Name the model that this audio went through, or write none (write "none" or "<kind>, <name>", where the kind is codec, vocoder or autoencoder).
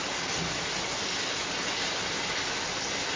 none